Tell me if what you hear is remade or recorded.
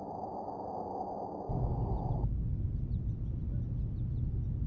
recorded